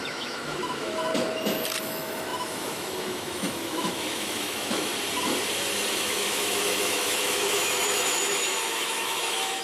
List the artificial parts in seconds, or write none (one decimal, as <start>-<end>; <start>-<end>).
0.0-1.1; 1.8-4.9; 6.0-9.6